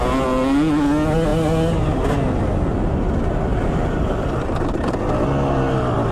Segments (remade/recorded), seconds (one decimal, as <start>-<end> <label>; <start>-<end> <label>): 0.0-3.5 recorded; 3.5-4.9 remade; 4.9-6.1 recorded